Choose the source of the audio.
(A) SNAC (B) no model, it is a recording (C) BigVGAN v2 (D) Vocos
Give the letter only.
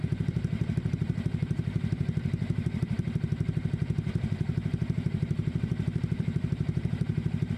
C